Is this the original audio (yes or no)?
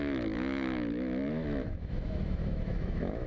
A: no